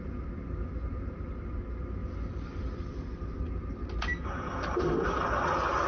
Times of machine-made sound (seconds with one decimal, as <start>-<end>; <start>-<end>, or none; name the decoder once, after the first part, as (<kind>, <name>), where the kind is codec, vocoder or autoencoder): none